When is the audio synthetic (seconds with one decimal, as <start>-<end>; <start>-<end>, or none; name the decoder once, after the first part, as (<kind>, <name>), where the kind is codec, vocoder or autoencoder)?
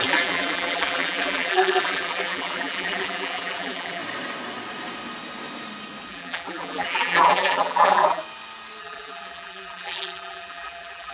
0.0-4.0 (vocoder, BigVGAN v2); 6.1-8.2; 8.8-11.1